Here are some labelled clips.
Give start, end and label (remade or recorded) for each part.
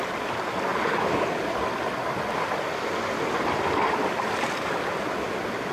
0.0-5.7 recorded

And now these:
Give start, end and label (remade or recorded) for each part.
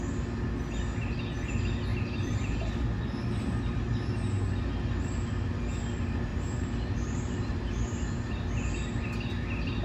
0.0-1.9 recorded; 1.9-2.5 remade; 2.5-6.3 recorded; 6.3-8.4 remade; 8.4-9.8 recorded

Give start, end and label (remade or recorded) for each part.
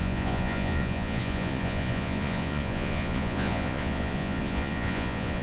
0.0-5.4 remade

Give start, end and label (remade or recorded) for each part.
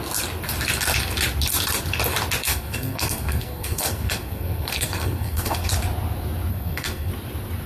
0.0-2.4 recorded; 2.4-5.7 remade; 5.7-6.5 recorded; 6.5-7.1 remade; 7.1-7.7 recorded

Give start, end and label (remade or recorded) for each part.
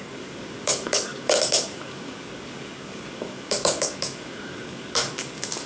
0.0-5.7 remade